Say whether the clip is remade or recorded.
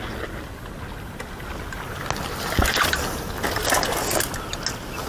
recorded